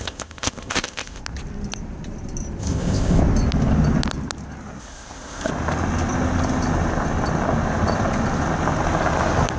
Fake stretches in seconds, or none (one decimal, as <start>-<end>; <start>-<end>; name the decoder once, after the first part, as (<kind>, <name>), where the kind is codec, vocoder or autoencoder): 0.0-1.2 (codec, ZipCodec); 2.6-3.2; 4.8-5.5